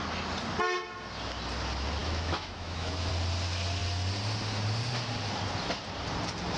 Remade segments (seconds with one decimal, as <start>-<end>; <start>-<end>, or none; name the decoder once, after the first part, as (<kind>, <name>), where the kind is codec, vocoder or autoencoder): 2.0-3.1 (autoencoder, DAC-VAE)